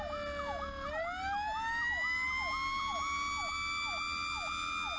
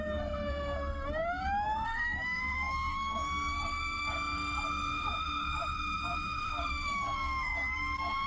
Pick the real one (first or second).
first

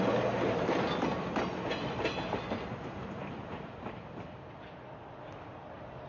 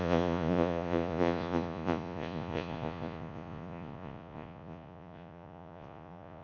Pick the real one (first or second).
first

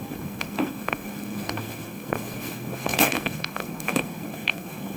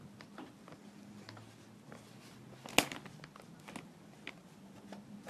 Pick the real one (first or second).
second